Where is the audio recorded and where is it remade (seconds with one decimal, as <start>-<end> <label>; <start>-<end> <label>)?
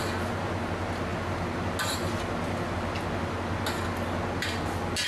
0.0-5.1 recorded